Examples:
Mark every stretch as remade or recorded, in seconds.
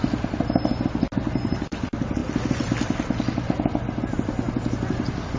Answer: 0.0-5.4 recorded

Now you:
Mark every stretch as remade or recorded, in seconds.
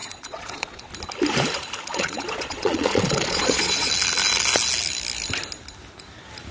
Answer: 0.0-0.9 remade; 0.9-1.9 recorded; 1.9-3.9 remade; 3.9-6.5 recorded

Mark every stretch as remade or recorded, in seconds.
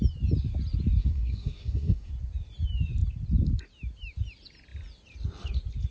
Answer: 0.0-1.0 recorded; 1.0-2.1 remade; 2.1-5.9 recorded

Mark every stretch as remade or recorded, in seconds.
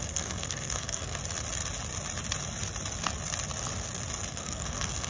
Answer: 0.0-1.2 remade; 1.2-4.3 recorded; 4.3-5.1 remade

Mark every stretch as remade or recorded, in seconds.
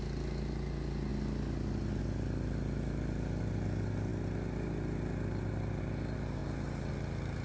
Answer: 0.0-7.4 recorded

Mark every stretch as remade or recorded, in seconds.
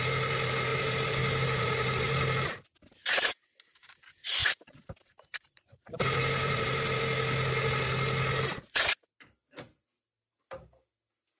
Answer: 0.0-0.7 recorded; 0.7-2.2 remade; 2.2-4.4 recorded; 4.4-7.0 remade; 7.0-11.4 recorded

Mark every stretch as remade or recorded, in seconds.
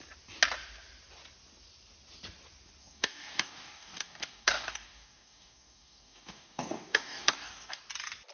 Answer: 0.0-2.8 recorded; 2.8-7.8 remade; 7.8-8.3 recorded